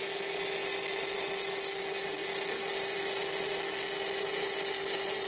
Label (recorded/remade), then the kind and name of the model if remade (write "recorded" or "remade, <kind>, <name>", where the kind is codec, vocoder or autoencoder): recorded